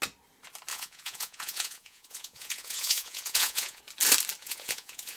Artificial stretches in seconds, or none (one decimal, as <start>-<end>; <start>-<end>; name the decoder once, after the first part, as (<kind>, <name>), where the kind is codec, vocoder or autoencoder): 0.7-3.8 (vocoder, Vocos); 4.4-5.2